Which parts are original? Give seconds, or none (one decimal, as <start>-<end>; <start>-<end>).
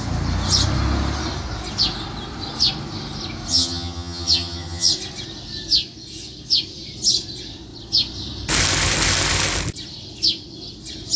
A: 0.0-3.5; 4.9-11.2